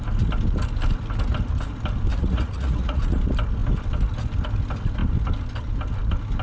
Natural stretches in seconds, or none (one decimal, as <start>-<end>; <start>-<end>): 0.0-2.1; 3.0-6.4